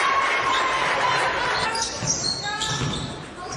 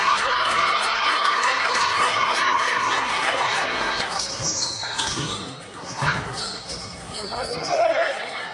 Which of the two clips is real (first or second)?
first